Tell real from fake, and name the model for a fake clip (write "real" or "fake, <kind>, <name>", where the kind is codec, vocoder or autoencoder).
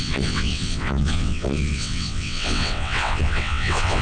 fake, vocoder, WaveNeXt